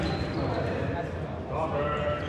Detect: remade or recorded recorded